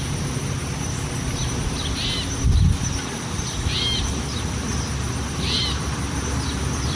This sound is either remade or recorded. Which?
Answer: recorded